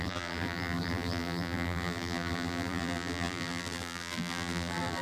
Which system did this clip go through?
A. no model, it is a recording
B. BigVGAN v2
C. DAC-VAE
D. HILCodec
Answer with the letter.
B